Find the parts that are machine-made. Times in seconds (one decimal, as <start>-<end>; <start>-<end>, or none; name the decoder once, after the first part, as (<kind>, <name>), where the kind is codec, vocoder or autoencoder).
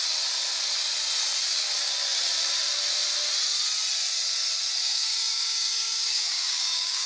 4.8-7.1 (codec, DAC)